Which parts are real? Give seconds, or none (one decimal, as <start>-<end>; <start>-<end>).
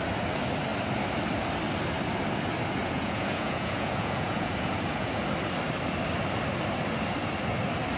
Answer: 0.0-2.8; 5.2-8.0